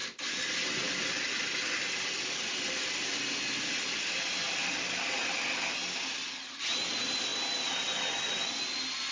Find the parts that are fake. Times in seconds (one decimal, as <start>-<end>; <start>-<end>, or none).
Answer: none

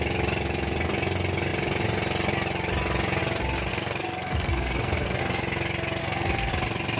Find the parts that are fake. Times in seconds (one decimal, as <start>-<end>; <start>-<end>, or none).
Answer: 3.7-5.2; 6.0-6.5

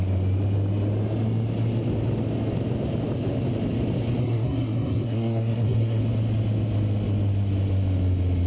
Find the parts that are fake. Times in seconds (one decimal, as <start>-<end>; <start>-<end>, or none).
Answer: 4.2-6.0

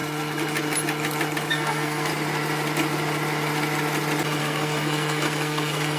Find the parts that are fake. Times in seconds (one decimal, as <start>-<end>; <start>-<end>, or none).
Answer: 1.5-2.1; 4.4-6.0

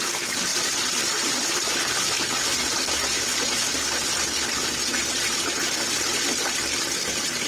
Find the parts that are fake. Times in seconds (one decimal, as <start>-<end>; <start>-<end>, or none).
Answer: none

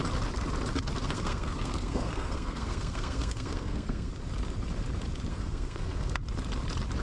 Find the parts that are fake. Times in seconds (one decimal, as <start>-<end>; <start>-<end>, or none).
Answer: 1.0-4.1; 5.3-6.2

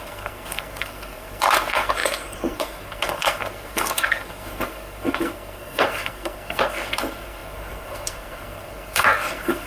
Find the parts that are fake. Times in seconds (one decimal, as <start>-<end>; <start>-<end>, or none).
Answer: 0.0-9.7